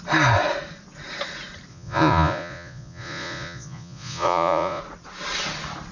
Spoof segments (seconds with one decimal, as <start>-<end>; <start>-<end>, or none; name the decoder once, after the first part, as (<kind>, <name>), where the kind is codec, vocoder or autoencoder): 1.7-4.8 (vocoder, Vocos)